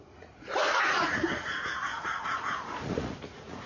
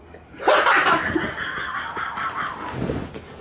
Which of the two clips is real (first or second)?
second